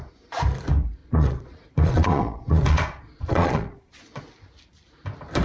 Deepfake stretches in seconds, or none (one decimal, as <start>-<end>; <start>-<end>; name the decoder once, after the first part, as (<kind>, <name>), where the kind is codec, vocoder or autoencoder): 1.0-4.2 (vocoder, Vocos)

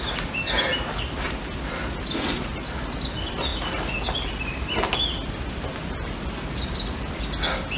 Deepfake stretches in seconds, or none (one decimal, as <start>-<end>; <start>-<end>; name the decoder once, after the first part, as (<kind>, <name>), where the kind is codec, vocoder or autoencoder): 0.7-1.4 (vocoder, BigVGAN v2)

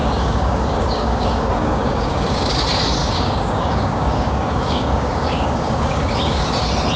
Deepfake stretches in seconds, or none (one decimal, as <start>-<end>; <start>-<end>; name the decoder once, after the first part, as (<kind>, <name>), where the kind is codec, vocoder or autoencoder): 0.0-2.6 (codec, DAC); 3.0-6.4

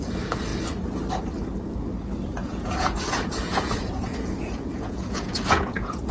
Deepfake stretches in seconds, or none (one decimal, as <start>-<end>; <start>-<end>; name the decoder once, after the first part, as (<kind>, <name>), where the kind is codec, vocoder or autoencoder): 2.4-6.1 (vocoder, Vocos)

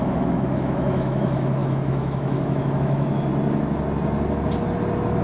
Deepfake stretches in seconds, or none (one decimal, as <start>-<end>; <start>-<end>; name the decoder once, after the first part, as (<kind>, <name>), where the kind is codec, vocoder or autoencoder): 0.0-3.3 (autoencoder, DAC-VAE)

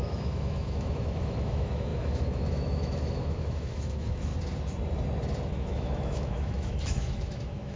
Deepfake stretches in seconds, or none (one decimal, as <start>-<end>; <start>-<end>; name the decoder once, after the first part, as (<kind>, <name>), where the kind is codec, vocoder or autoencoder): 0.0-4.3 (autoencoder, DAC-VAE); 5.5-7.8

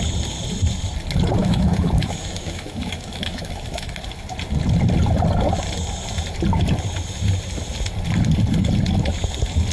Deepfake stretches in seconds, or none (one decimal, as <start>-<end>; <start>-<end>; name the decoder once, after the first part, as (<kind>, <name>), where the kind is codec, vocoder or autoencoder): 1.4-4.0 (autoencoder, DAC-VAE)

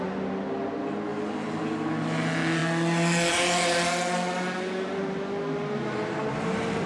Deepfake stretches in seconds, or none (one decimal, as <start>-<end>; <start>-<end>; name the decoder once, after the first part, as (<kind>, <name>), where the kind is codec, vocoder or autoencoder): none